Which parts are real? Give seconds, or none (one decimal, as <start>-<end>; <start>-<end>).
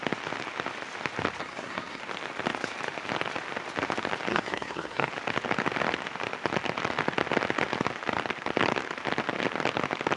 0.0-1.4; 2.0-4.3; 5.1-10.2